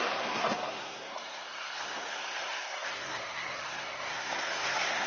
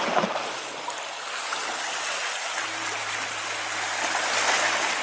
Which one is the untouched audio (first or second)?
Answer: second